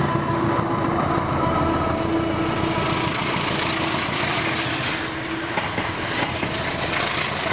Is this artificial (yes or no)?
no